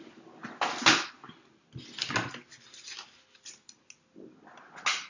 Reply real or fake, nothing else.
real